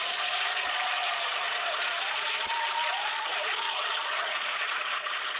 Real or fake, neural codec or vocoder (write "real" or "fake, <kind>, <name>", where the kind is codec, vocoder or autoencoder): fake, vocoder, Vocos